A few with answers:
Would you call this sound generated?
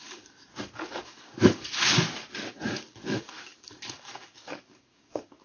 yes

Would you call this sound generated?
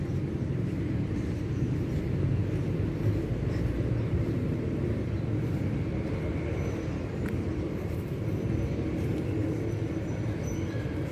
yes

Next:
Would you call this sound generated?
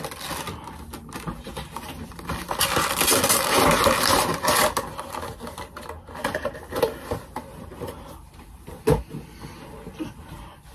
no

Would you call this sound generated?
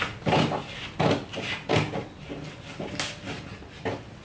no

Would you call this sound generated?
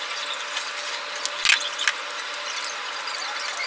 no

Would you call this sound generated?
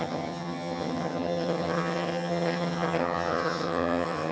yes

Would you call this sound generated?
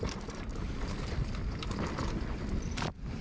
yes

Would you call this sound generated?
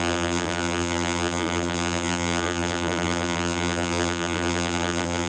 yes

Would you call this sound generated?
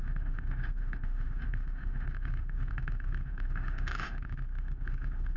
yes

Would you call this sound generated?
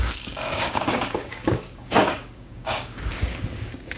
yes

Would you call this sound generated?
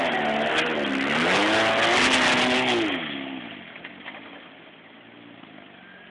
no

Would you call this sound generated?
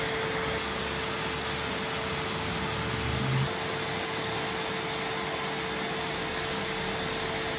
no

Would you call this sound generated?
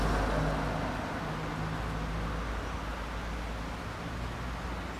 no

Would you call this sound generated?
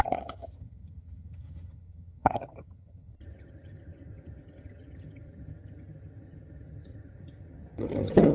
yes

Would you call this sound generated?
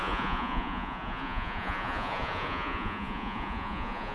yes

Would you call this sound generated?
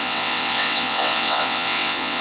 yes